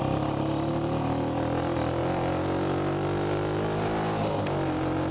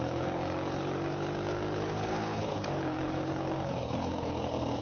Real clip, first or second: first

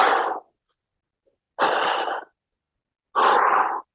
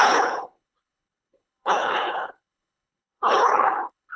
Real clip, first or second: first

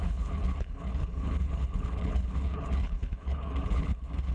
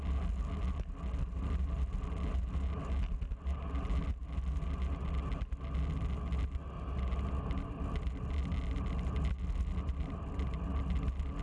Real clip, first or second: second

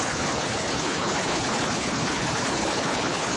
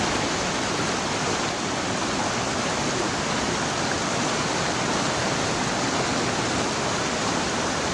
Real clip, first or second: second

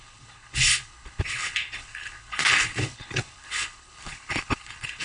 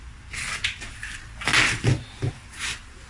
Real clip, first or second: second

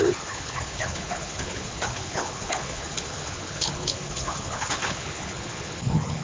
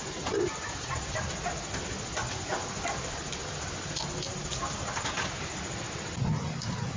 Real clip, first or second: second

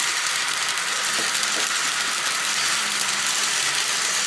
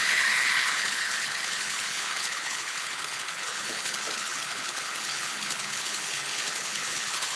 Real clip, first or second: first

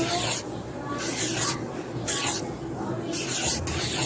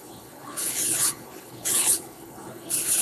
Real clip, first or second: first